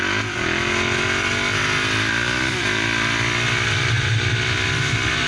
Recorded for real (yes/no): yes